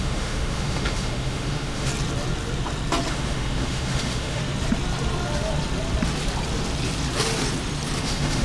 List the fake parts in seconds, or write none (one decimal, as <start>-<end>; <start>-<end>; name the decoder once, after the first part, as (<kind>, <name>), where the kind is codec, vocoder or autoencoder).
0.0-1.9 (autoencoder, DAC-VAE); 3.1-4.4; 8.0-8.4